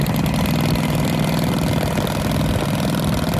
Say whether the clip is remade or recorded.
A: recorded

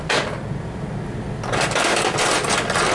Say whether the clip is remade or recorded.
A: recorded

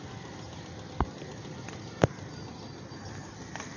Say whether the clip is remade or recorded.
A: recorded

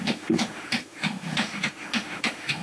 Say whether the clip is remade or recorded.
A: remade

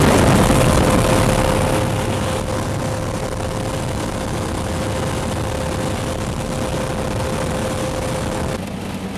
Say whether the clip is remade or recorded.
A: recorded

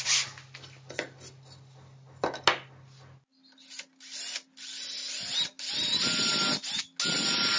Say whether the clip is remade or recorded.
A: recorded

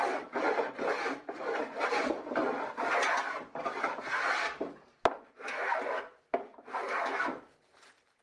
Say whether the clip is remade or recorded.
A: recorded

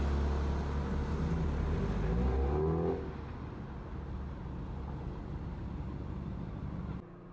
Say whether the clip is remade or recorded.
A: recorded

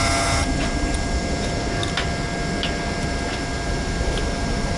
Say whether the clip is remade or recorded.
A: recorded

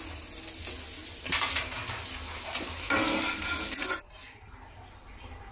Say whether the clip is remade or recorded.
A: recorded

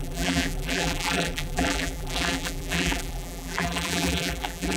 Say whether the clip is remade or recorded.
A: remade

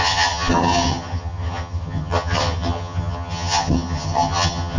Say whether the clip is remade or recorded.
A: remade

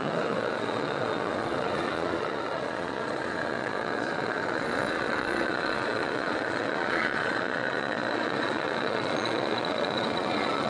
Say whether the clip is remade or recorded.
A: remade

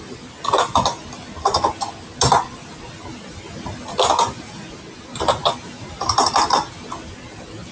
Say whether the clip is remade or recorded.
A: recorded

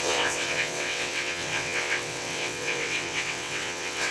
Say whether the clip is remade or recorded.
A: remade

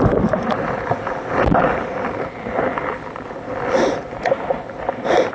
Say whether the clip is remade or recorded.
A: recorded